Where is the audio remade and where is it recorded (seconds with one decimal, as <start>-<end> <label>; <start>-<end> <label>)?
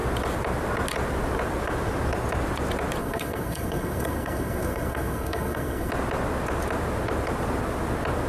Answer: 0.0-3.0 recorded; 3.0-5.9 remade; 5.9-8.3 recorded